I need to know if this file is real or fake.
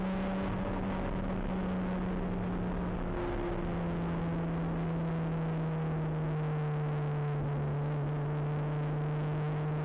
real